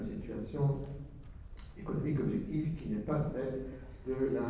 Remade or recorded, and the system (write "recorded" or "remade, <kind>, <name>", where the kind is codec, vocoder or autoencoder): remade, vocoder, BigVGAN v2